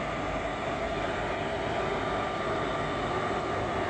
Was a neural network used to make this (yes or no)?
no